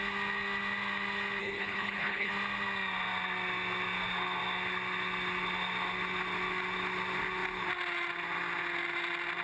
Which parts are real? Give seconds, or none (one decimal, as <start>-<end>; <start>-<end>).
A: 0.0-1.4; 2.3-9.4